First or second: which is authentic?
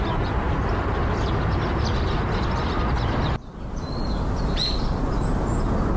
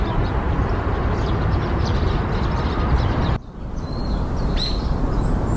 first